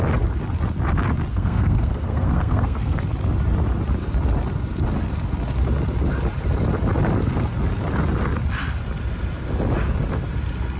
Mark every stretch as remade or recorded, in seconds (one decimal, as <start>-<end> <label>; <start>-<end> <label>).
0.0-1.3 recorded; 1.3-3.0 remade; 3.0-10.8 recorded

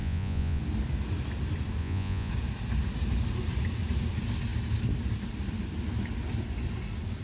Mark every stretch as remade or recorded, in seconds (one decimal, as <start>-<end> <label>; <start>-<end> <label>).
0.0-0.6 remade; 0.6-1.8 recorded; 1.8-2.3 remade; 2.3-7.2 recorded

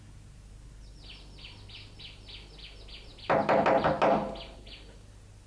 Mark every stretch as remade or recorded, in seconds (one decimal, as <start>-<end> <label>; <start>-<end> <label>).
0.0-5.5 recorded

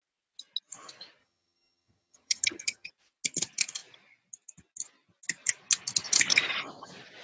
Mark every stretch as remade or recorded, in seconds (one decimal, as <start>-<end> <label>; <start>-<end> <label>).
0.0-1.2 recorded; 1.2-2.9 remade; 2.9-7.2 recorded

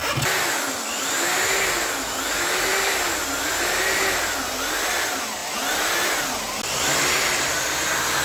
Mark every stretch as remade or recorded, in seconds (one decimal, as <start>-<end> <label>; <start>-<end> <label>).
0.0-8.2 recorded

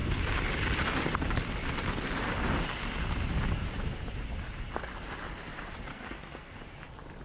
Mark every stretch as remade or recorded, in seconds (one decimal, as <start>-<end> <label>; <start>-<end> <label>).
0.0-5.9 recorded; 5.9-6.5 remade; 6.5-7.2 recorded